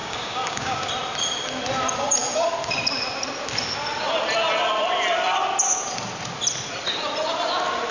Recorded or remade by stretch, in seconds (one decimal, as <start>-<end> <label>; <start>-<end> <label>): 0.0-0.9 remade; 0.9-7.9 recorded